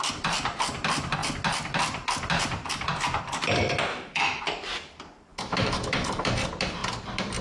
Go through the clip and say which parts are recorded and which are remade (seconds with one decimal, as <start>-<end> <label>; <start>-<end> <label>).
0.0-3.9 recorded; 3.9-4.4 remade; 4.4-5.3 recorded; 5.3-6.3 remade; 6.3-7.4 recorded